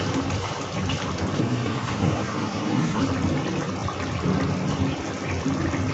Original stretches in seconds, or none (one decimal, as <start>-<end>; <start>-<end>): 0.0-1.4; 3.0-5.9